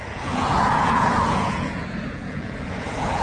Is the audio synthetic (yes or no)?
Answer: yes